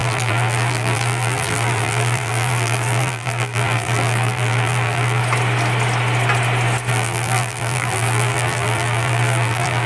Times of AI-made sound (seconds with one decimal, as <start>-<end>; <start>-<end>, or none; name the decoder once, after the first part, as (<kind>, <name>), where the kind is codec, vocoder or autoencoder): 0.0-5.2 (vocoder, BigVGAN v2); 6.9-9.9